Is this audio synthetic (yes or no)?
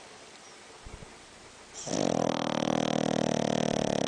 no